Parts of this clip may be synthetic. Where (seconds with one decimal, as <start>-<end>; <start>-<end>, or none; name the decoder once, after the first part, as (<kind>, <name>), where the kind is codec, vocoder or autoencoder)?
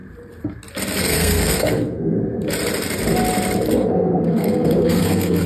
1.0-2.2 (codec, SNAC); 3.7-5.5